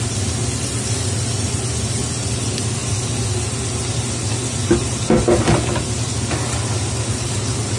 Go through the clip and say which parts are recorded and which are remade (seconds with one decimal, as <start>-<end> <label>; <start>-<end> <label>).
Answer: 0.0-7.8 recorded

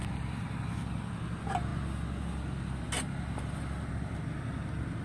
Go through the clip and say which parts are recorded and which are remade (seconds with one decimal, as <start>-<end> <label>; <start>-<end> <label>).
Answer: 0.0-5.0 recorded

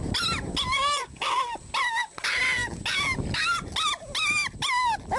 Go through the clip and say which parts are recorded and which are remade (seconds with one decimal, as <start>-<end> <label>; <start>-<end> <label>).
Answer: 0.0-5.2 recorded

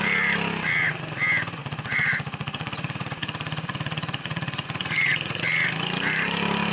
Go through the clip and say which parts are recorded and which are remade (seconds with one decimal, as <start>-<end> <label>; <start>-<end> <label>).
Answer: 0.0-1.6 recorded; 1.6-5.4 remade; 5.4-6.7 recorded